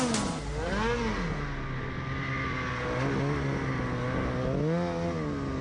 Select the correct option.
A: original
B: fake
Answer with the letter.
A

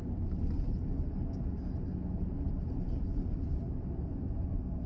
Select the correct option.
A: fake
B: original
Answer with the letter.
B